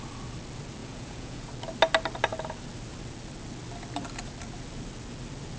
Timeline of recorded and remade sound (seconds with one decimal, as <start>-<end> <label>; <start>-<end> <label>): 0.0-0.8 recorded; 0.8-1.5 remade; 1.5-5.6 recorded